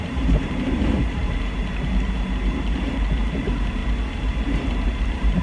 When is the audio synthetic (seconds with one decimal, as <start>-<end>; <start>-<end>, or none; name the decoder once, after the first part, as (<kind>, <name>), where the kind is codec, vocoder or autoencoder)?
0.0-1.2 (vocoder, BigVGAN v2); 3.4-3.8; 5.0-5.4